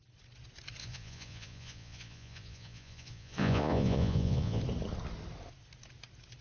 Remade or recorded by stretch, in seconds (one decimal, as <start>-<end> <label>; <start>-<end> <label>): 0.0-0.8 recorded; 0.8-4.6 remade; 4.6-6.4 recorded